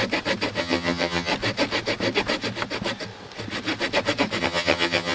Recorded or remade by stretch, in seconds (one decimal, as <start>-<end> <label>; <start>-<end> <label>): 0.0-0.6 recorded; 0.6-1.3 remade; 1.3-4.4 recorded; 4.4-5.1 remade